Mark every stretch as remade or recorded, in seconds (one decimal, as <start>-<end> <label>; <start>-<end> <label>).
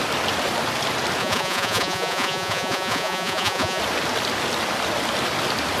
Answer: 0.0-1.2 recorded; 1.2-3.8 remade; 3.8-5.8 recorded